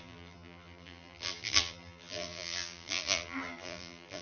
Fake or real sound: fake